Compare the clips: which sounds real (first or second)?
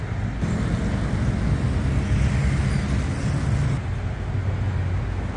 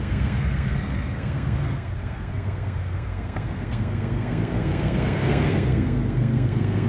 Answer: first